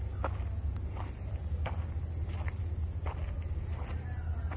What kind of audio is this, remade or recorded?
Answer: recorded